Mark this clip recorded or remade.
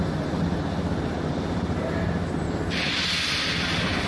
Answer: recorded